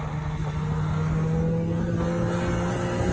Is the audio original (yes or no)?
yes